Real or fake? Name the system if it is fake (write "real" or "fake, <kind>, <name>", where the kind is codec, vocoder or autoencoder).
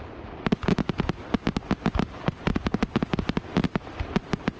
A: real